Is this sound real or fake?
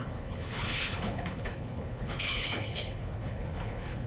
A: fake